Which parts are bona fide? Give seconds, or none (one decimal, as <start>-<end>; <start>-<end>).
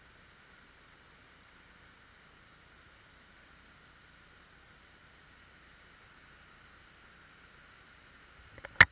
0.0-8.9